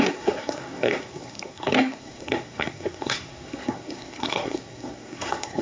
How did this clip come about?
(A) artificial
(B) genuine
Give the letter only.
A